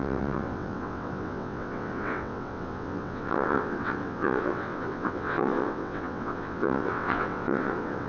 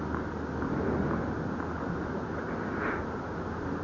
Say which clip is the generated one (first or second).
first